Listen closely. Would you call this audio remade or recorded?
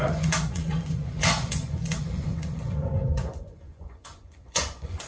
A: remade